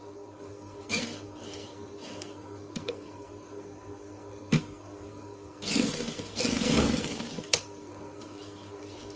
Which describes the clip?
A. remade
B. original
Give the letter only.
A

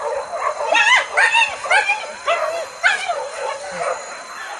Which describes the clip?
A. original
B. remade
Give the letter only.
A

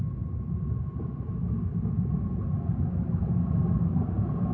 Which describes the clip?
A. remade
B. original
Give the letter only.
B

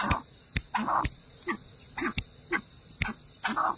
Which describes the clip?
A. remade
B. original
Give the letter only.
B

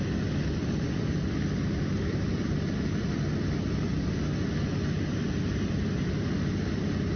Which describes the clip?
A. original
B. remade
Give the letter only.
A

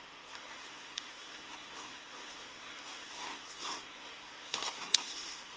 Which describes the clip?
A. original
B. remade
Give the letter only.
B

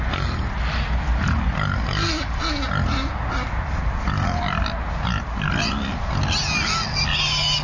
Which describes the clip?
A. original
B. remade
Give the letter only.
A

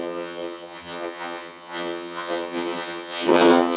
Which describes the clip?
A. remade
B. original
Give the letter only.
A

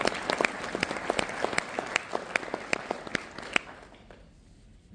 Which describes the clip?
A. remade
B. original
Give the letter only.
B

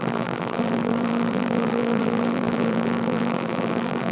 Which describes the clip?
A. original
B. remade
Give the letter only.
B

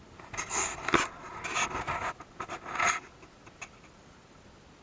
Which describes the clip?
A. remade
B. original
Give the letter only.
B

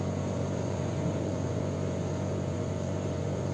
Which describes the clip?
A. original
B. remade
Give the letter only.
B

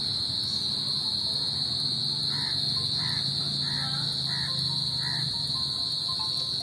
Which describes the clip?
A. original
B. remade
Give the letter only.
A